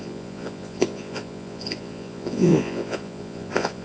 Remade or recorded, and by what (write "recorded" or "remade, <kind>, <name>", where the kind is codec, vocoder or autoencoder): remade, vocoder, Vocos